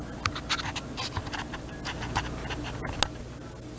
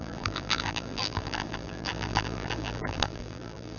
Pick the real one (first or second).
first